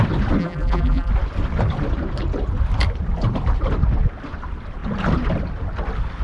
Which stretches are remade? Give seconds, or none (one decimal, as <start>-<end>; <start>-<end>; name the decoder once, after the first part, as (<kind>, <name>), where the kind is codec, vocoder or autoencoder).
0.4-1.1 (vocoder, BigVGAN v2)